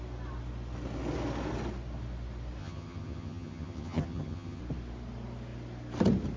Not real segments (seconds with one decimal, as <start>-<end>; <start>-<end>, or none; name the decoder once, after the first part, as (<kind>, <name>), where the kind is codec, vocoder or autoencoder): 2.6-4.6 (vocoder, HiFi-GAN)

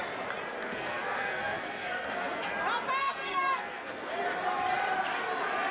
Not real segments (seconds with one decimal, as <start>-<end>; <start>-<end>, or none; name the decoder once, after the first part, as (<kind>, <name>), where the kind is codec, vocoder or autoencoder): 0.6-2.5 (codec, SNAC); 3.0-4.1

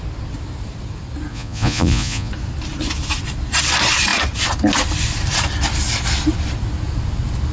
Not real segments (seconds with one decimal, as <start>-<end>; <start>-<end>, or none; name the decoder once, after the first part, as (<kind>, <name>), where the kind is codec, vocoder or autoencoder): 1.3-2.3 (vocoder, Vocos)

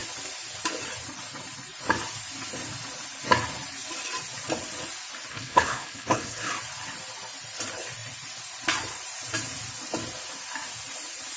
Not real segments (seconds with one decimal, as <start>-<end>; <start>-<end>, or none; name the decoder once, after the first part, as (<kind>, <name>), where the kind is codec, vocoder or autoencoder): 5.3-6.5 (codec, HILCodec)

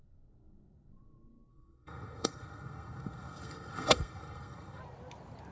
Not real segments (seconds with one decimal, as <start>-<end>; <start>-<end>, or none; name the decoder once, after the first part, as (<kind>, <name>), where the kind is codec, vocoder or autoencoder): 1.5-4.8 (codec, SNAC)

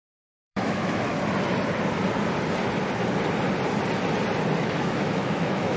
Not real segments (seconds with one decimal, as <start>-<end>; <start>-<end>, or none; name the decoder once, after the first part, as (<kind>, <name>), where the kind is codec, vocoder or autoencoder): 0.0-1.1 (autoencoder, DAC-VAE); 4.6-5.8

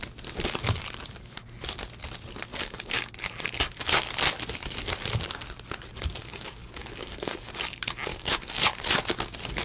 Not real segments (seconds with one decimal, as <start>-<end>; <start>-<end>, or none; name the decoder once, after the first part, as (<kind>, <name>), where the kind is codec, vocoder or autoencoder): 2.5-3.1 (codec, DAC); 6.3-7.5; 8.1-8.8

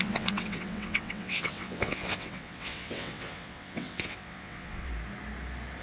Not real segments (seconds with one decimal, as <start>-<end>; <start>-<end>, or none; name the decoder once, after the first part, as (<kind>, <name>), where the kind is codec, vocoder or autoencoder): 0.0-4.9 (vocoder, WaveNeXt)